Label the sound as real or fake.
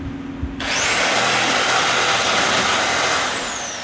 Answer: real